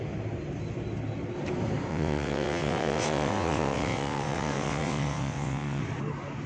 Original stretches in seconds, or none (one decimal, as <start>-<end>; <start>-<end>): 0.0-1.9; 5.8-6.5